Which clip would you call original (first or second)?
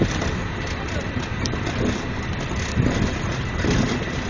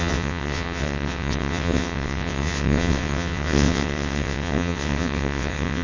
first